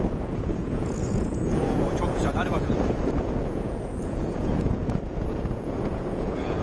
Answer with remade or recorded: remade